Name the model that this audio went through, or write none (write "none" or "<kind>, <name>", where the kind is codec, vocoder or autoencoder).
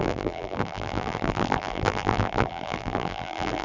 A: vocoder, BigVGAN v2